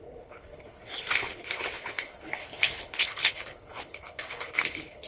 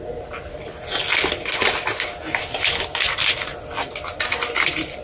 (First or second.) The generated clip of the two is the first